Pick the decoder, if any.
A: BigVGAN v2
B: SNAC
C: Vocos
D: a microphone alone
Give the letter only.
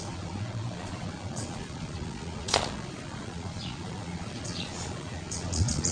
C